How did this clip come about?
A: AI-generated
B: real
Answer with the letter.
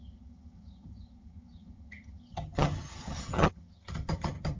A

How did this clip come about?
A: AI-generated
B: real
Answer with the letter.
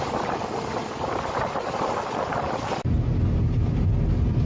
B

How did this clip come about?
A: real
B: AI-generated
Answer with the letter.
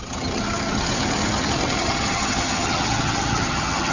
B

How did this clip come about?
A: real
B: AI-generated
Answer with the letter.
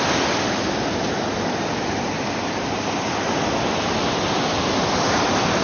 A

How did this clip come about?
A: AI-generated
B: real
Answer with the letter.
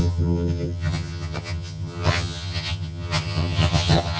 A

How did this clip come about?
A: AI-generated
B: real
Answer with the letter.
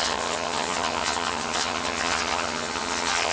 A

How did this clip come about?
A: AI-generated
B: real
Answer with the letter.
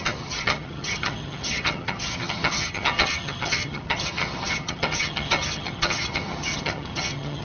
A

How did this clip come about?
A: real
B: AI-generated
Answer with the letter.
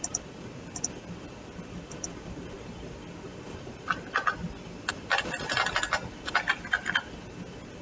A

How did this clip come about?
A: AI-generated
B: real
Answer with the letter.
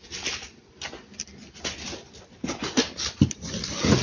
B